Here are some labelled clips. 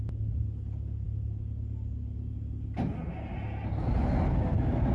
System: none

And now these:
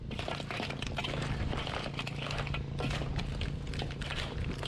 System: none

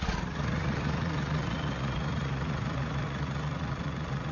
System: vocoder, Vocos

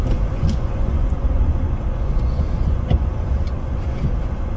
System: vocoder, Vocos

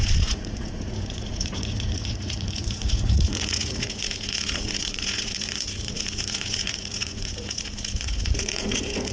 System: vocoder, Vocos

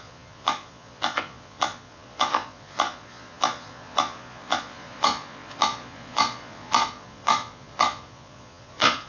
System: vocoder, Vocos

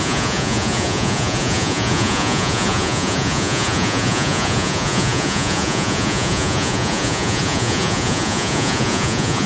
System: vocoder, Vocos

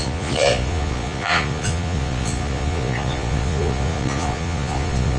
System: vocoder, Vocos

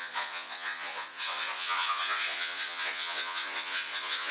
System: vocoder, Vocos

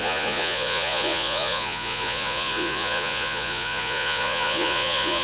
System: vocoder, Vocos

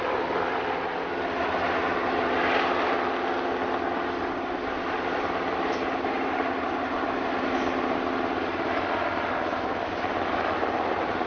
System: none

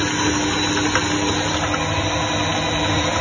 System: none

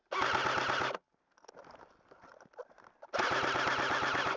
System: none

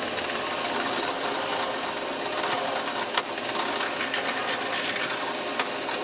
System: none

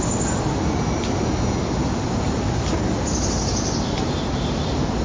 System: none